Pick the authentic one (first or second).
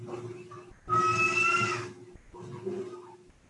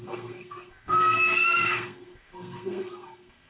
first